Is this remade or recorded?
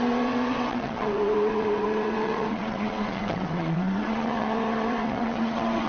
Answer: remade